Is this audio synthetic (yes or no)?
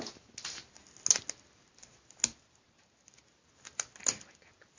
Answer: no